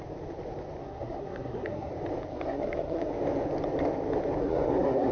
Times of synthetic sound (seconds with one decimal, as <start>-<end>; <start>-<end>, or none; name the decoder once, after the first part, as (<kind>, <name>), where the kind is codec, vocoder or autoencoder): 0.8-1.9 (codec, SNAC); 2.3-3.1; 4.4-5.1